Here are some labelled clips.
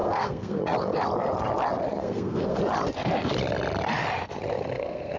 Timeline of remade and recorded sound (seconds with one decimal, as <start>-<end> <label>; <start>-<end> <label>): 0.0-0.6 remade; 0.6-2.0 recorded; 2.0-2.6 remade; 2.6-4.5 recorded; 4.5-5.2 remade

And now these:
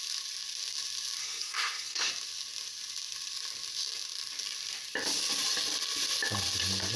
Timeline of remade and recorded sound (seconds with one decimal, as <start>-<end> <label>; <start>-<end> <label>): 0.0-1.2 recorded; 1.2-2.1 remade; 2.1-7.0 recorded

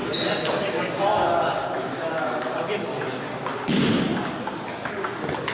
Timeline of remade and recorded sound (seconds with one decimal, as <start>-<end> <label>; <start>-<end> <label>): 0.0-5.5 recorded

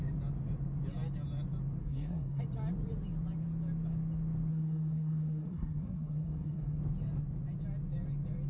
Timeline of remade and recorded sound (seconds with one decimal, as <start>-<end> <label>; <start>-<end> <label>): 0.0-1.8 recorded; 1.8-2.4 remade; 2.4-4.5 recorded; 4.5-6.8 remade; 6.8-8.5 recorded

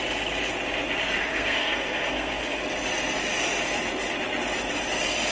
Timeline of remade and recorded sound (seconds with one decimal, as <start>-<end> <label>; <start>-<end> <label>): 0.0-1.2 recorded; 1.2-2.6 remade; 2.6-5.3 recorded

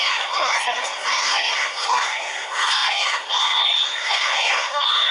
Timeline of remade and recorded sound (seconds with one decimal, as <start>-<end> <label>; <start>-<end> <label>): 0.0-5.1 remade